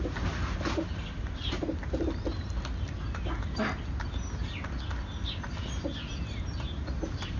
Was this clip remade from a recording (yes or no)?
no